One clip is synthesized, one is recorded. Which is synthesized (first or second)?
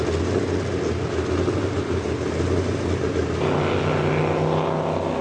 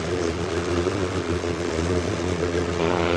second